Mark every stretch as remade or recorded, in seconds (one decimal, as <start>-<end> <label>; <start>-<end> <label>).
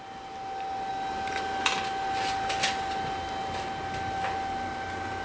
0.0-5.2 recorded